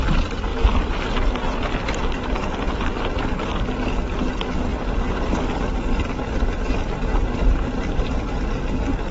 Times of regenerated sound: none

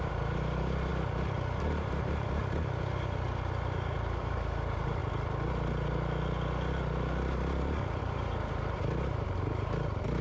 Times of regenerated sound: 0.0-0.9 (vocoder, BigVGAN v2); 1.6-2.4; 4.2-5.0; 8.0-10.2

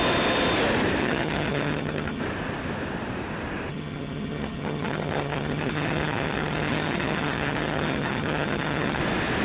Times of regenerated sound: 1.0-2.2 (vocoder, HiFi-GAN); 3.7-9.0

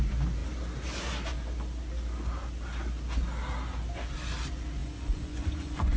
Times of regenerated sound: 4.8-6.0 (vocoder, Vocos)